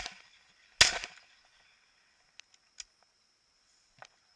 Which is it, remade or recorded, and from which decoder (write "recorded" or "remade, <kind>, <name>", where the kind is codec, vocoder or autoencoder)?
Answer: recorded